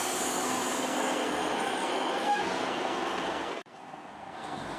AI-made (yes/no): yes